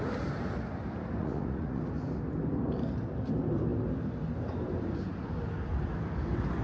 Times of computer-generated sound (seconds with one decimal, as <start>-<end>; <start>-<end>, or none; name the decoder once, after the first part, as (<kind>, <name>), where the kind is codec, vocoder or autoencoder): 1.2-1.8 (vocoder, Vocos)

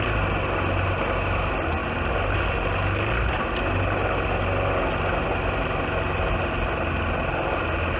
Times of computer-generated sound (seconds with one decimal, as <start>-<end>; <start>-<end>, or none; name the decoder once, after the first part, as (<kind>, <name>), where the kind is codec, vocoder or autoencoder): none

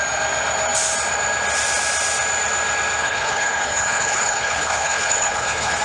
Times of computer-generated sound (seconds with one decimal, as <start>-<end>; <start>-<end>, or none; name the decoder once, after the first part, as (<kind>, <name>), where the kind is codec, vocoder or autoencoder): 3.0-5.8 (codec, HILCodec)

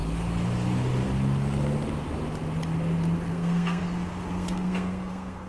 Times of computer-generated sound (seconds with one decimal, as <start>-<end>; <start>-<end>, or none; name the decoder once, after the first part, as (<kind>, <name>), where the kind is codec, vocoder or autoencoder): 3.3-3.8 (codec, SNAC); 4.3-5.5

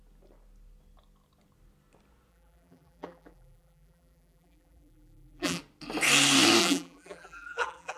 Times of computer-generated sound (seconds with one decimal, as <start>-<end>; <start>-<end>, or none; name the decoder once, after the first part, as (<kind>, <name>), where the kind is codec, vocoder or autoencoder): 2.3-5.6 (vocoder, BigVGAN v2); 6.6-8.0

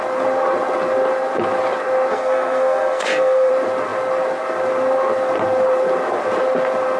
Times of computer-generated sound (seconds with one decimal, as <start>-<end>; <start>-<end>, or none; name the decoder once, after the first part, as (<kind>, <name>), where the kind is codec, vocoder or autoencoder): 2.1-3.5 (codec, SNAC)

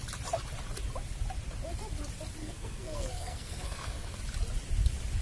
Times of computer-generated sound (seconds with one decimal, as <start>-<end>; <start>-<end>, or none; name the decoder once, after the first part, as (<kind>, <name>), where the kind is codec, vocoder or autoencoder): 2.4-4.2 (codec, SNAC)